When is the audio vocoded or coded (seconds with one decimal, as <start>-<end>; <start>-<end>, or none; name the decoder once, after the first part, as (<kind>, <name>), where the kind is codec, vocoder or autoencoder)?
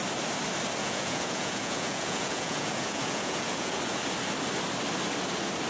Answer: 0.8-3.8 (vocoder, Vocos)